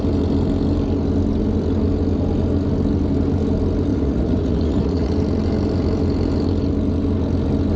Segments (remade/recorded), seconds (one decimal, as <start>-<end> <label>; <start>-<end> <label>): 0.0-3.9 recorded; 3.9-5.1 remade; 5.1-7.8 recorded